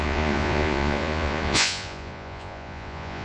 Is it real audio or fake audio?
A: fake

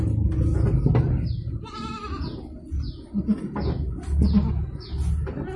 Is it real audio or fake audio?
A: real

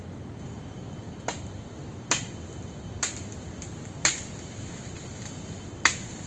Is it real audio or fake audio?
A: real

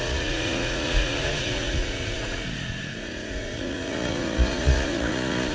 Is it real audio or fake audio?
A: fake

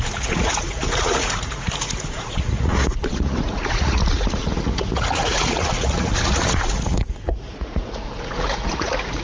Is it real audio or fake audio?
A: fake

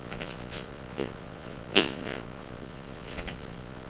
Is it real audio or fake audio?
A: fake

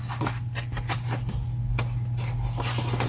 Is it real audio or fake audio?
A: real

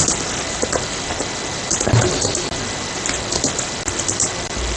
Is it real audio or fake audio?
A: real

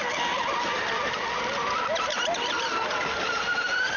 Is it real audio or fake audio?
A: real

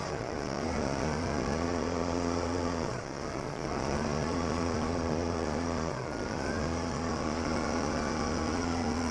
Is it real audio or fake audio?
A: fake